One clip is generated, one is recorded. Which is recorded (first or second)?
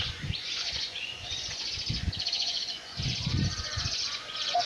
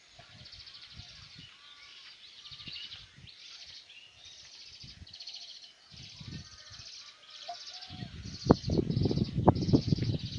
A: second